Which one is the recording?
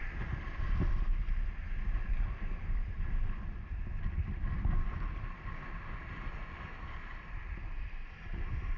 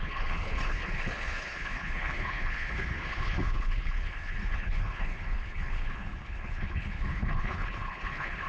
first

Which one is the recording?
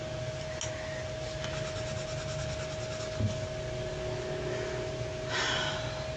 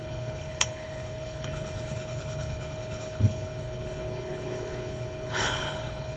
first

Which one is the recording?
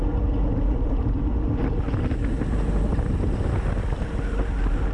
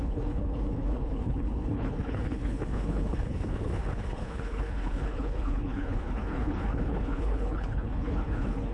first